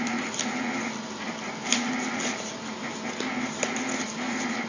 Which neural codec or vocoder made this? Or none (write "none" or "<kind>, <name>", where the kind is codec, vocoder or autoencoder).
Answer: none